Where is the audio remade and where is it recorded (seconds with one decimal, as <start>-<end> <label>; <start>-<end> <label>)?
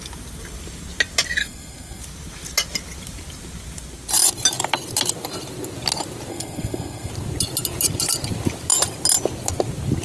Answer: 0.0-1.4 recorded; 1.4-2.0 remade; 2.0-6.3 recorded; 6.3-7.1 remade; 7.1-10.0 recorded